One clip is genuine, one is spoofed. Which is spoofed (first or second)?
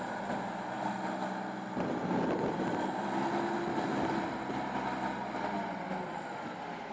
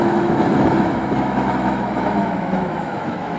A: second